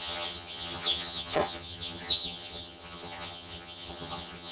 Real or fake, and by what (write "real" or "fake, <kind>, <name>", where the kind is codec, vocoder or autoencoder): fake, vocoder, HiFi-GAN